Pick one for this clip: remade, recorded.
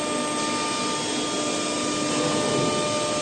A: recorded